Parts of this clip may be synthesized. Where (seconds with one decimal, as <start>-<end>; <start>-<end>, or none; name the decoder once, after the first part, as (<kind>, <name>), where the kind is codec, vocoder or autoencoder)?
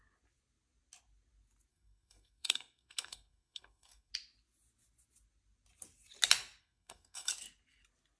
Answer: 1.7-4.1 (codec, SNAC); 6.6-7.3